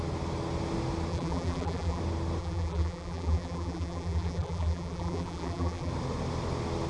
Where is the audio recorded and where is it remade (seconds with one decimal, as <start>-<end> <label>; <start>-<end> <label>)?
0.0-1.1 recorded; 1.1-2.0 remade; 2.0-2.4 recorded; 2.4-5.9 remade; 5.9-6.9 recorded